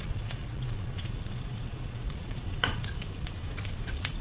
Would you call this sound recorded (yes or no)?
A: no